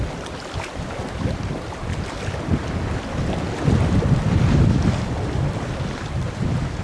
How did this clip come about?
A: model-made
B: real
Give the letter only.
B